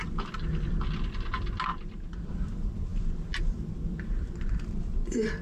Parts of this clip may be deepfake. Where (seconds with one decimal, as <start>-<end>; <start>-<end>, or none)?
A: 1.7-2.3